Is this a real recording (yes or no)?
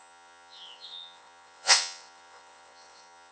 no